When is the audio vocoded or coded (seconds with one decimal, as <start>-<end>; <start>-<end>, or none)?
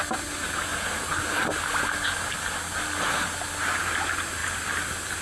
none